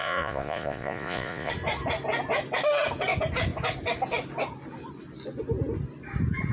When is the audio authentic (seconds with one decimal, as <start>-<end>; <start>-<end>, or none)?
1.5-6.5